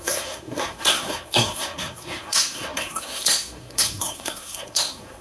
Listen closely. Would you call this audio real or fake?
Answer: fake